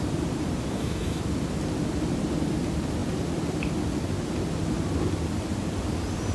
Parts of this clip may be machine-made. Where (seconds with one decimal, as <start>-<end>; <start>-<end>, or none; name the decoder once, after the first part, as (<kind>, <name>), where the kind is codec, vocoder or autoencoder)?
0.7-1.2 (codec, DAC)